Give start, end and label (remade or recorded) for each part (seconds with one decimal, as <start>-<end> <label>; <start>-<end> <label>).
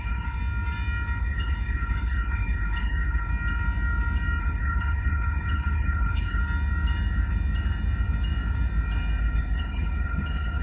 0.0-0.4 remade; 0.4-1.2 recorded; 1.2-3.3 remade; 3.3-4.4 recorded; 4.4-6.4 remade; 6.4-9.2 recorded; 9.2-10.6 remade